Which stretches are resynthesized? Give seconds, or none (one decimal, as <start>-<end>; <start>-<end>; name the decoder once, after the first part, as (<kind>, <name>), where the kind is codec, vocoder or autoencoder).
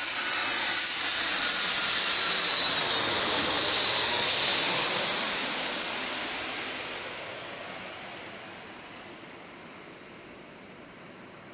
none